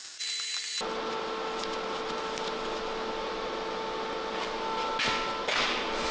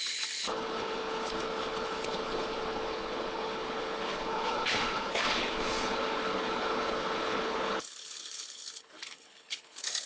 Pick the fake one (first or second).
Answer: second